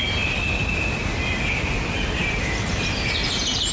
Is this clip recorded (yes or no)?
yes